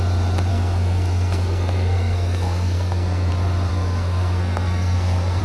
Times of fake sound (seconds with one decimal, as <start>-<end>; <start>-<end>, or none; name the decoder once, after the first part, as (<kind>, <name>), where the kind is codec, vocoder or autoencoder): 0.5-3.3 (codec, SNAC); 3.7-5.4